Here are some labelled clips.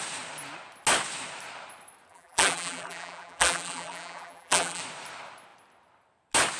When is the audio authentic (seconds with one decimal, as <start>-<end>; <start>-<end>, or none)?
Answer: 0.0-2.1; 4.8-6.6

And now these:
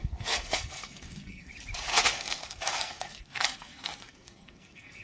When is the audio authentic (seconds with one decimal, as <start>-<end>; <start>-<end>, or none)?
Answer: 1.5-1.9

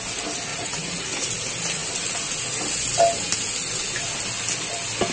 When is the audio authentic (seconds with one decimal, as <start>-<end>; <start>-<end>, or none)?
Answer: 0.0-0.5; 1.3-5.1

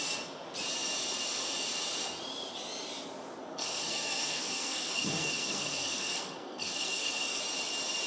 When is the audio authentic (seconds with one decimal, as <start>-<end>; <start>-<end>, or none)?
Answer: 0.0-3.5; 7.4-8.1